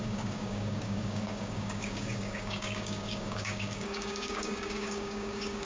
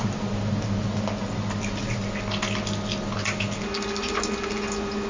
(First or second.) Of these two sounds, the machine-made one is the first